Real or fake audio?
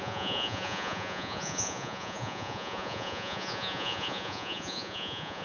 fake